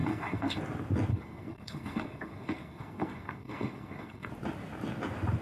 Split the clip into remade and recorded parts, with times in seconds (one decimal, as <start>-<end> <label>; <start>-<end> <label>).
0.0-0.6 remade; 0.6-1.1 recorded; 1.1-4.3 remade; 4.3-5.4 recorded